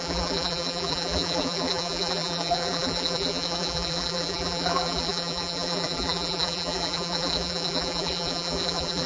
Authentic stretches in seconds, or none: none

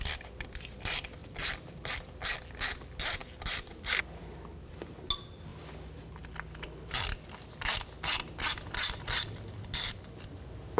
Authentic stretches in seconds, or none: 0.0-1.2; 2.1-10.8

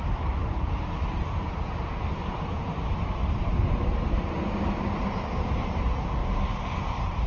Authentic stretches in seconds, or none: 6.2-6.8

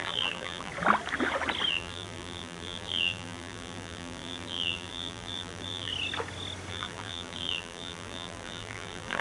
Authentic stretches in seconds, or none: 0.7-1.7; 5.9-6.7

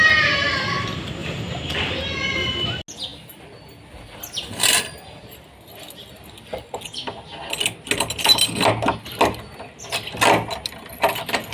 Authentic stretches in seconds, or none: 0.0-11.5